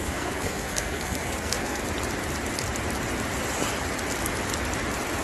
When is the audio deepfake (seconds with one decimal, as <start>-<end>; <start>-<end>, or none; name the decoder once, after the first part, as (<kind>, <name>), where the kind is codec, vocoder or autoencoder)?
0.0-1.8 (codec, SNAC)